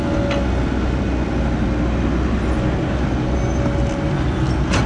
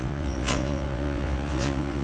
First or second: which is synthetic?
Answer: second